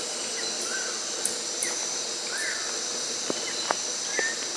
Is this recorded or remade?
recorded